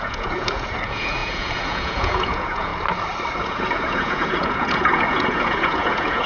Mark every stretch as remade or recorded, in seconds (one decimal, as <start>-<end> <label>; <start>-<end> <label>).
0.0-2.7 remade; 2.7-3.4 recorded; 3.4-6.3 remade